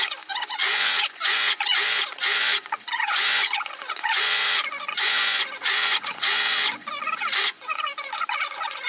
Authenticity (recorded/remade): remade